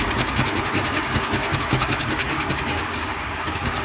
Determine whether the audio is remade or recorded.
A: remade